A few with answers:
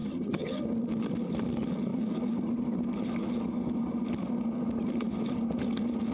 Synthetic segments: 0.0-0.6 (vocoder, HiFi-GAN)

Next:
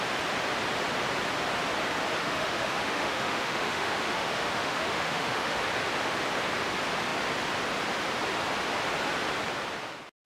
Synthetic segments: 2.2-5.6 (autoencoder, DAC-VAE)